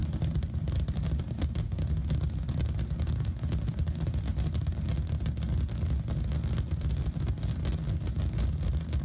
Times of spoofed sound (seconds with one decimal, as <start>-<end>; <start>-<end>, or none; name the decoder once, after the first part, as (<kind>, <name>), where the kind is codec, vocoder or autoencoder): 0.0-1.2 (vocoder, BigVGAN v2)